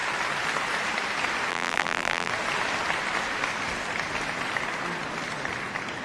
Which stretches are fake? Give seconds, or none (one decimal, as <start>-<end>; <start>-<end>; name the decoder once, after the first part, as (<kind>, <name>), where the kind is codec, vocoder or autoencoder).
1.5-2.3 (vocoder, BigVGAN v2)